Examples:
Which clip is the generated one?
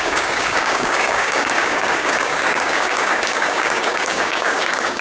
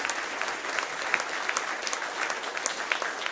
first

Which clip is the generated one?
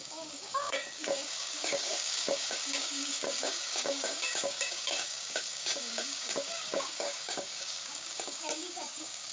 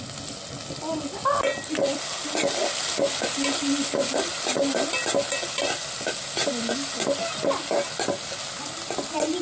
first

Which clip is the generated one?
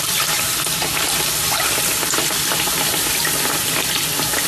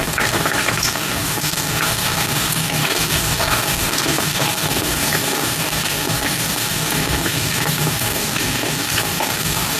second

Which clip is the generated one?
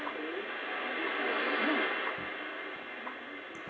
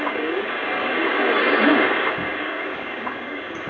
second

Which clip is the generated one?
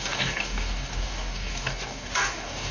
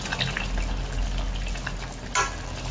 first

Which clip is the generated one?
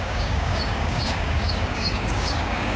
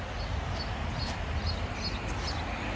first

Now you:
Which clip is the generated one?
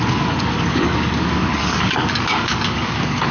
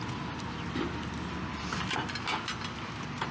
first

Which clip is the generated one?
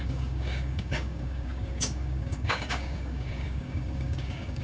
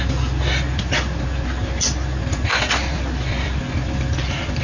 first